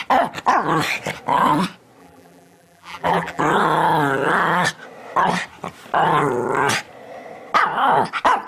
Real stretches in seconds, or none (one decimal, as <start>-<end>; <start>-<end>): 0.0-2.0; 3.4-8.5